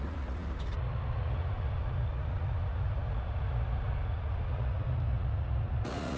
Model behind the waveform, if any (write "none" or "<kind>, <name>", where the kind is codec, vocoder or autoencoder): vocoder, Vocos